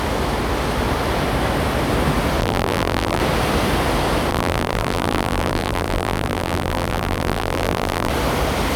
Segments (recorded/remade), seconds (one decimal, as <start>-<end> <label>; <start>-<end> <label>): 0.0-2.4 recorded; 2.4-3.2 remade; 3.2-4.3 recorded; 4.3-8.1 remade; 8.1-8.8 recorded